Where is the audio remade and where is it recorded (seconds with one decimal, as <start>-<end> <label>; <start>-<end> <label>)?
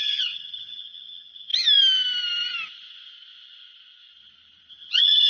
0.0-1.5 remade; 1.5-4.7 recorded; 4.7-5.3 remade